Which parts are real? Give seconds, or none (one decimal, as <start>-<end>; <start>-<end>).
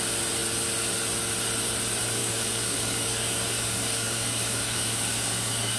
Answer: 0.0-2.2